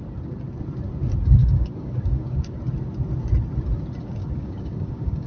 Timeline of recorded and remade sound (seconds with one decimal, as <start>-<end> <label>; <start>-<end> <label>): 0.0-1.4 recorded; 1.4-2.6 remade; 2.6-4.2 recorded; 4.2-5.3 remade